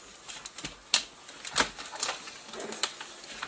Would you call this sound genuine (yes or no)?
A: yes